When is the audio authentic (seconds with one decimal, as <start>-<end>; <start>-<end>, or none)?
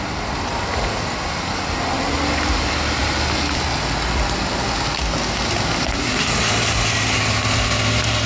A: 0.0-8.3